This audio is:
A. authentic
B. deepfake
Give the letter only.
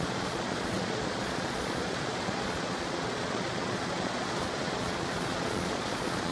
B